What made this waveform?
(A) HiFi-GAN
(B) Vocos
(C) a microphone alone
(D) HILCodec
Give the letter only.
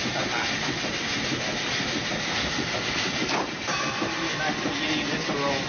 C